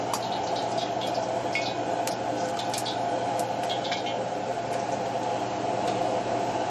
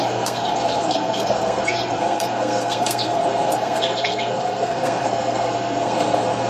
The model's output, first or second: second